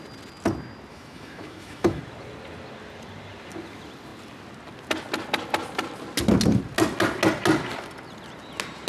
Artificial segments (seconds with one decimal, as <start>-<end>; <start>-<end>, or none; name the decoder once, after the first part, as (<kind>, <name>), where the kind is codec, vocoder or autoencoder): 0.9-2.0 (autoencoder, DAC-VAE)